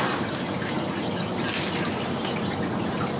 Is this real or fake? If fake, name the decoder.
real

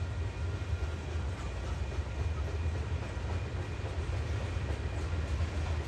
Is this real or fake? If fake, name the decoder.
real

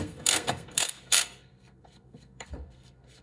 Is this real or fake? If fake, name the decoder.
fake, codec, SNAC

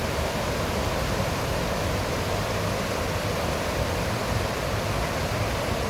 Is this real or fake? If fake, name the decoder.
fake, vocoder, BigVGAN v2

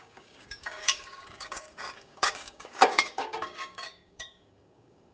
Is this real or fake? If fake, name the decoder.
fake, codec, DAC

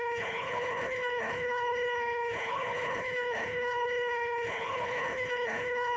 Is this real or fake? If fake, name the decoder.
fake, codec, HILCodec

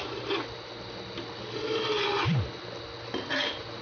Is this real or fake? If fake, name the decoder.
real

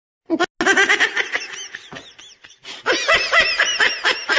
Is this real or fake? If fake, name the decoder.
real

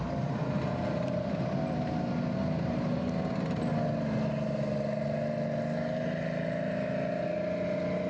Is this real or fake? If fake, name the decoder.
real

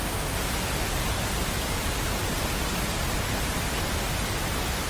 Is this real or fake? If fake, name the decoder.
real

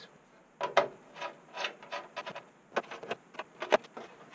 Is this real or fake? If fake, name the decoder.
real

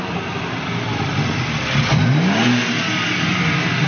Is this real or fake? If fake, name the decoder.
real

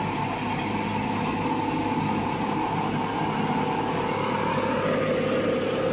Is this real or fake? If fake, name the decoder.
real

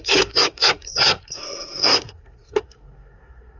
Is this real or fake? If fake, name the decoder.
fake, codec, SNAC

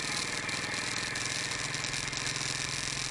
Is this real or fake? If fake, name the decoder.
real